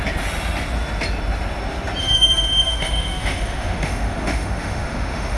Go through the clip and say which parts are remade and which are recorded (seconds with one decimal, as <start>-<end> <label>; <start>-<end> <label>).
0.0-2.0 recorded; 2.0-5.4 remade